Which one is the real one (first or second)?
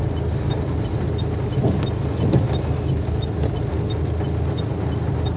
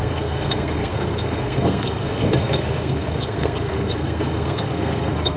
first